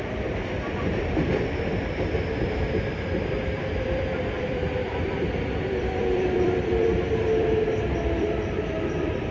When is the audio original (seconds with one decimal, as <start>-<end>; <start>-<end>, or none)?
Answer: none